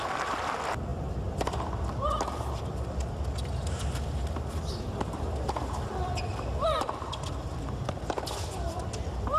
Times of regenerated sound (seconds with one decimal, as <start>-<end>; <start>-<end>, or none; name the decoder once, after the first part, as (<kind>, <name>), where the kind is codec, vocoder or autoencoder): none